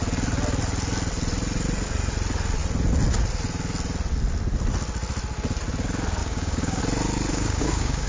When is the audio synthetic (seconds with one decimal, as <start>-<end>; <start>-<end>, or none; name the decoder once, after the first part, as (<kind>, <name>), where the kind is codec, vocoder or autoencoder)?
6.2-6.8 (codec, DAC); 7.3-8.1